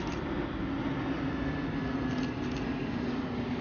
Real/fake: real